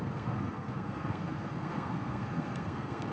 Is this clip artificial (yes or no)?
yes